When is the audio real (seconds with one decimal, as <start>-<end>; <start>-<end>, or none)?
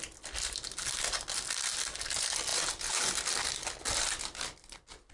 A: 0.0-5.1